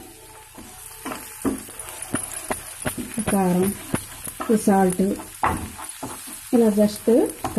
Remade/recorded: recorded